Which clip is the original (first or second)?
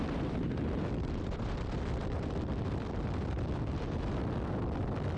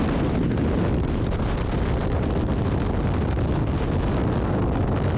second